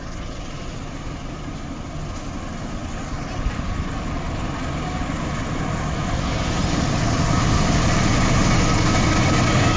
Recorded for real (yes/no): yes